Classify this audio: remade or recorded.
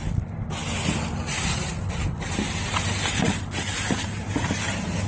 recorded